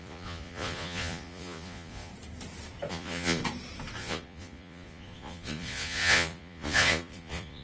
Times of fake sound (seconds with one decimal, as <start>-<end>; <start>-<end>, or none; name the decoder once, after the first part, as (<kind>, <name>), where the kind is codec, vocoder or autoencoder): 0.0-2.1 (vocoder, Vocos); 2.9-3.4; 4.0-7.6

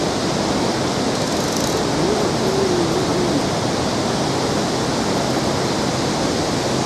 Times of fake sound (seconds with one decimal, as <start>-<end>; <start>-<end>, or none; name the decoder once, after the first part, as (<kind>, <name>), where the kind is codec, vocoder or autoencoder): none

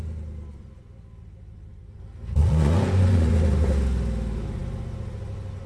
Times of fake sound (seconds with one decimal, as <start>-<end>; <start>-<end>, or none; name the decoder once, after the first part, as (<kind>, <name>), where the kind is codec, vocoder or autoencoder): 2.4-3.3 (vocoder, Vocos)

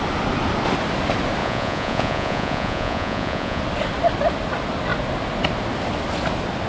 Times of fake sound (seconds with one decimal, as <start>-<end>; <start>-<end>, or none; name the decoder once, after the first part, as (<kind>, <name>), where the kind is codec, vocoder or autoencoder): 1.4-3.6 (vocoder, Vocos)

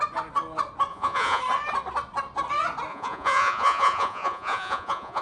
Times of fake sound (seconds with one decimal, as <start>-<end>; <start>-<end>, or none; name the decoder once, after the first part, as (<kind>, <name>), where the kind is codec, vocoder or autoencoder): 0.9-1.4 (vocoder, Vocos); 2.9-5.2

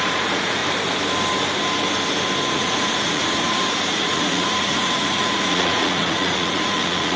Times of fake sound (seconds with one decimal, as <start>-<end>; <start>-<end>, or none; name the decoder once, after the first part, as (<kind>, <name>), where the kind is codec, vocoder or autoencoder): 0.0-0.6 (vocoder, Vocos); 2.5-7.2